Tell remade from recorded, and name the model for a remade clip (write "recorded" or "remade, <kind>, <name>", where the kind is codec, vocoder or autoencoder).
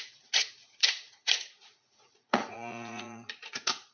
remade, vocoder, Vocos